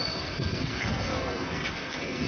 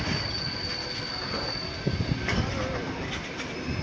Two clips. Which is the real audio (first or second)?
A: second